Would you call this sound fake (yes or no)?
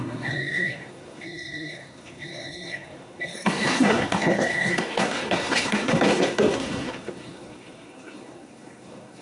yes